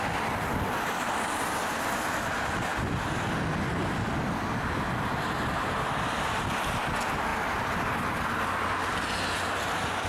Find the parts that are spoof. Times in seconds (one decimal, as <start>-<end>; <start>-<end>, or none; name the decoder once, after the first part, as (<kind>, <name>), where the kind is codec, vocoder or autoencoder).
none